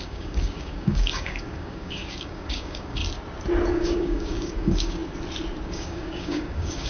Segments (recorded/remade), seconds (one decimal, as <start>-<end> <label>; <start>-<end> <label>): 0.0-3.0 remade; 3.0-3.7 recorded; 3.7-5.0 remade; 5.0-5.7 recorded; 5.7-6.9 remade